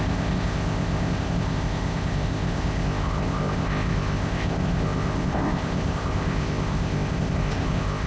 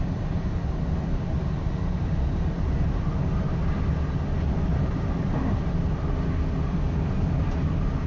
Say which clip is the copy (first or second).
first